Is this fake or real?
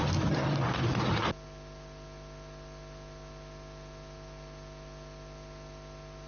real